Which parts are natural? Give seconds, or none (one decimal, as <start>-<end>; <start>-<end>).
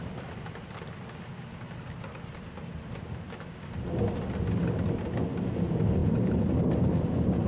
0.0-6.0; 6.6-7.5